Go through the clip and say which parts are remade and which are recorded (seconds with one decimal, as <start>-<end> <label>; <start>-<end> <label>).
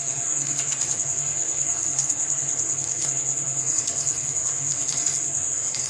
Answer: 0.0-5.9 remade